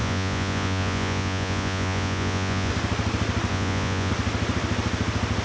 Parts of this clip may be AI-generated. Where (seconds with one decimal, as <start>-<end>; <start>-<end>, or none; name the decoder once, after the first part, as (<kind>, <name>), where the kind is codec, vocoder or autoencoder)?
0.0-2.7 (vocoder, Vocos); 3.5-4.1